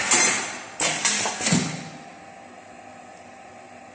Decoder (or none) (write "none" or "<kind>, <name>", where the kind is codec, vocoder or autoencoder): none